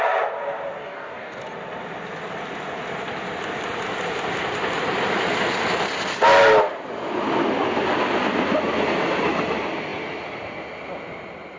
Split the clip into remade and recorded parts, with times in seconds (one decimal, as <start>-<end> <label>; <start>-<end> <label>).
0.0-0.8 recorded; 0.8-1.4 remade; 1.4-11.6 recorded